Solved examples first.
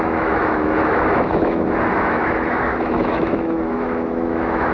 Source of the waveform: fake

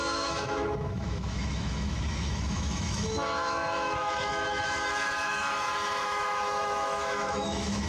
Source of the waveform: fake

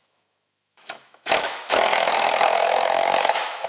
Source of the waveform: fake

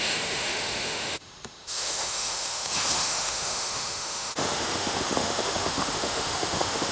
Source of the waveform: fake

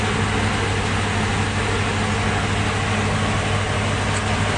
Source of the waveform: real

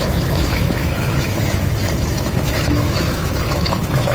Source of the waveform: fake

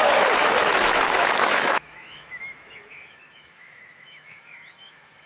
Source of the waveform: fake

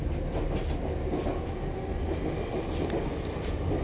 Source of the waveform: real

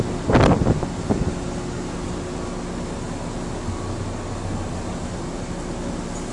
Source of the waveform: real